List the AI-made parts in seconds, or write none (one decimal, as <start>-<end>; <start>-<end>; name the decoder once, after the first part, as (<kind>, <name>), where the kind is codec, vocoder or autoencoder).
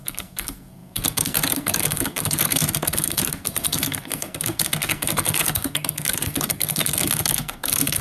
0.0-8.0 (codec, SNAC)